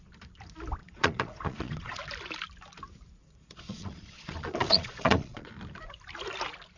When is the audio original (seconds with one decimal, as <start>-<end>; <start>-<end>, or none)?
0.0-0.8; 2.0-3.2; 5.5-6.8